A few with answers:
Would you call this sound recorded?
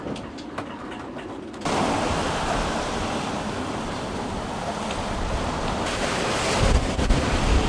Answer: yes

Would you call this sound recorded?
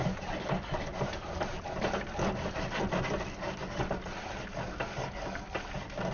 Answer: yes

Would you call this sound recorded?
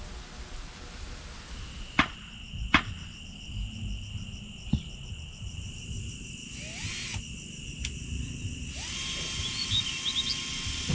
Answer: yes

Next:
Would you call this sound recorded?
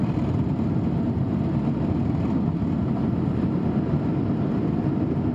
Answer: yes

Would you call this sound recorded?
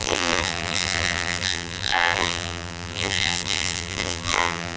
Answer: no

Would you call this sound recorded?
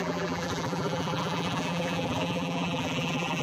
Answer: no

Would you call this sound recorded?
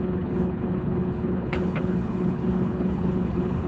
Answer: no